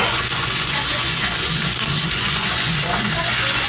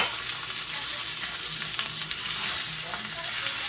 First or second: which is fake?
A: first